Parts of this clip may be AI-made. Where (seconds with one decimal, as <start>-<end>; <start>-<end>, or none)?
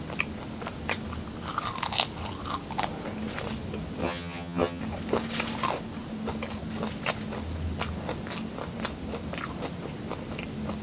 4.0-4.8